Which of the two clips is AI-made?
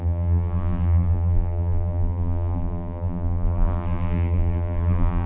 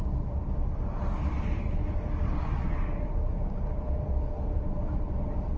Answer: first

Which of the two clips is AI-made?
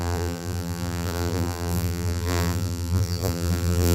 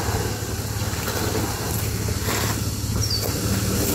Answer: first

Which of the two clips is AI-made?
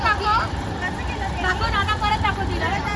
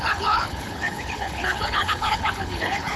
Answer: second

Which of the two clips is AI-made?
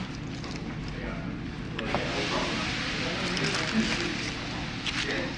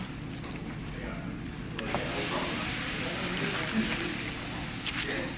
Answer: second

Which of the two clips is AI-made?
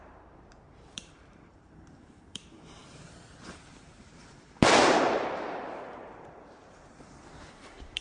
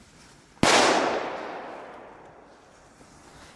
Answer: first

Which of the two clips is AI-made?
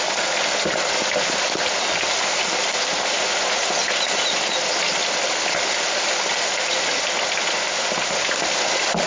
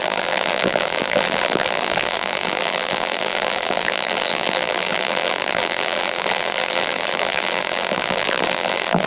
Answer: second